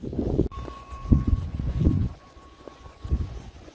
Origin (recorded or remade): remade